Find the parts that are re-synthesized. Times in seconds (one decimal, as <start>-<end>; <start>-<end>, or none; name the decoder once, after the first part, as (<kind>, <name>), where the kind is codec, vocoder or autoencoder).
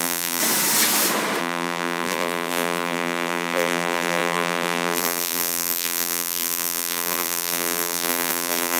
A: 0.0-0.4 (vocoder, BigVGAN v2); 1.4-8.8